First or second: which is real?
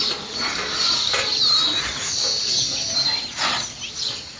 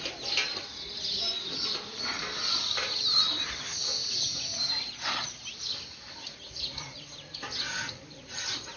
first